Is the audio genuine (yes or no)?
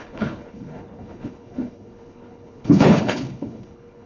no